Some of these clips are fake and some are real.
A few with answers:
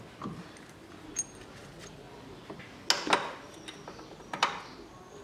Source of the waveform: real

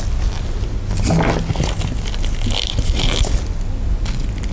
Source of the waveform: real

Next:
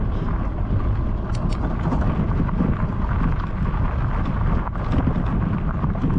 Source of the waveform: real